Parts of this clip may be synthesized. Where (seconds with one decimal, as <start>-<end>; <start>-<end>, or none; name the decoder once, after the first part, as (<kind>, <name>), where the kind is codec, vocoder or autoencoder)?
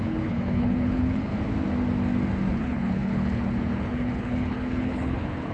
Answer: 0.0-1.3 (codec, HILCodec); 2.5-5.5